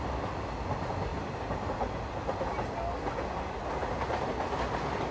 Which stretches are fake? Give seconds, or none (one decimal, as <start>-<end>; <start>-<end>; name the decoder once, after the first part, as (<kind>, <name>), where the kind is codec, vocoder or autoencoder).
none